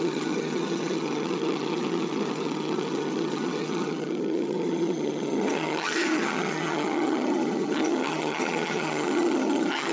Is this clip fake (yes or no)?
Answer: yes